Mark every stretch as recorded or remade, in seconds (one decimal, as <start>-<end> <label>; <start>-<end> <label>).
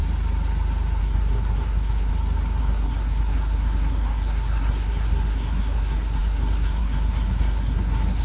0.0-1.0 recorded; 1.0-2.1 remade; 2.1-2.6 recorded; 2.6-8.2 remade